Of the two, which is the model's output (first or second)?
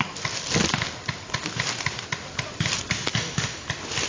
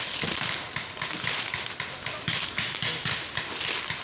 first